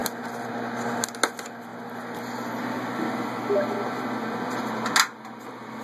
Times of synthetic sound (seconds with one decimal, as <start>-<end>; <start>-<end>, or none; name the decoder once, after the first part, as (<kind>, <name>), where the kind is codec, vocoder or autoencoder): none